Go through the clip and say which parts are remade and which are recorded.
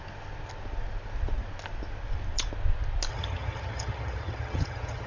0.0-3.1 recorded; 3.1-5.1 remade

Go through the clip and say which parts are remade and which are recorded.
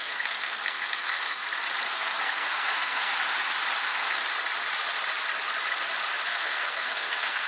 0.0-1.4 remade; 1.4-1.9 recorded; 1.9-3.1 remade; 3.1-3.8 recorded; 3.8-4.2 remade; 4.2-6.3 recorded; 6.3-7.5 remade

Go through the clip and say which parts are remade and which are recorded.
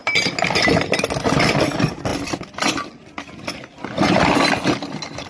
0.0-5.3 recorded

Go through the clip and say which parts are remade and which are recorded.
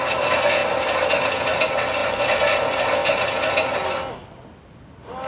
0.0-5.3 recorded